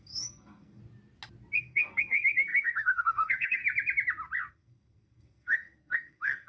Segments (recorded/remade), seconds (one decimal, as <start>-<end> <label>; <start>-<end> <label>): 0.0-0.8 remade; 0.8-1.6 recorded; 1.6-3.6 remade; 3.6-4.5 recorded; 4.5-6.5 remade